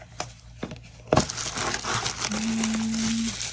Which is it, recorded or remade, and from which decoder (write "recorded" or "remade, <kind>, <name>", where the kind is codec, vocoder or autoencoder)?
recorded